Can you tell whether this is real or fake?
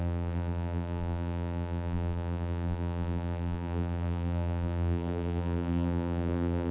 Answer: fake